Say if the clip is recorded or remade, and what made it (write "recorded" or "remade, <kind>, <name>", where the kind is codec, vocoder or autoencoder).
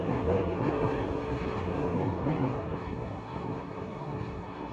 remade, codec, SNAC